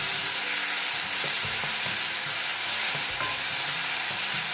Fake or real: real